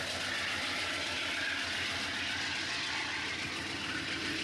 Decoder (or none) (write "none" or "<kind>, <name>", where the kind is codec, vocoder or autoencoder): none